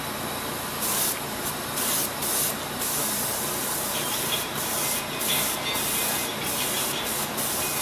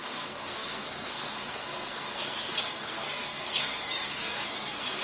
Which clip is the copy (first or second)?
second